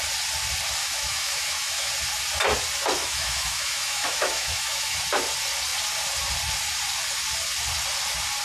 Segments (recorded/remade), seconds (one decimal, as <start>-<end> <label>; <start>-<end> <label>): 0.0-0.8 recorded; 0.8-1.9 remade; 1.9-3.0 recorded; 3.0-5.0 remade; 5.0-8.4 recorded